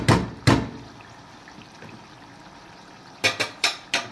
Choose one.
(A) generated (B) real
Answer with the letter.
B